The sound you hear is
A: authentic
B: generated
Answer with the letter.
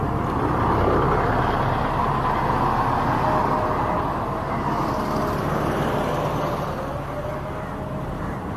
A